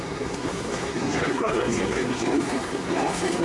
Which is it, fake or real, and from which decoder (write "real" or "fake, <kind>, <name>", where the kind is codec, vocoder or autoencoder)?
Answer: fake, codec, SNAC